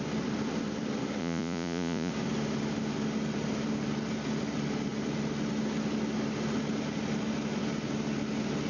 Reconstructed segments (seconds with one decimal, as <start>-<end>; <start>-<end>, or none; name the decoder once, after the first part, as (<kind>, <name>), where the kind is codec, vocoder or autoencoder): 1.2-2.1 (vocoder, Vocos)